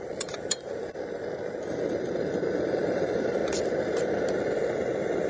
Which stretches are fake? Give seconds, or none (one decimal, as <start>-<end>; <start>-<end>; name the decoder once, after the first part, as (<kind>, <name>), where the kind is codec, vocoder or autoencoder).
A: 0.0-0.9 (vocoder, BigVGAN v2); 1.7-3.4